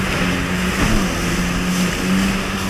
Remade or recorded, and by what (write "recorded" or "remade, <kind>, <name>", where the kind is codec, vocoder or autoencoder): recorded